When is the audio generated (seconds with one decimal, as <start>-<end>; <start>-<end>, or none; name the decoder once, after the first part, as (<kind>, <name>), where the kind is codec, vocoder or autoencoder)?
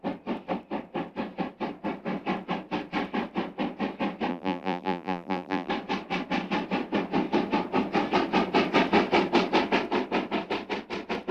4.3-5.7 (vocoder, BigVGAN v2)